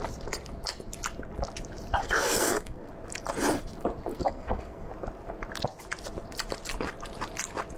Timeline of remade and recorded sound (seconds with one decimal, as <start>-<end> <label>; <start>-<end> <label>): 0.0-2.0 recorded; 2.0-2.9 remade; 2.9-4.1 recorded; 4.1-4.9 remade; 4.9-7.8 recorded